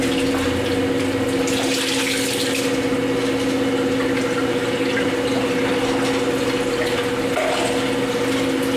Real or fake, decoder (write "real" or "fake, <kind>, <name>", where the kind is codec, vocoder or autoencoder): real